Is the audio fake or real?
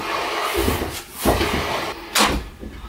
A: real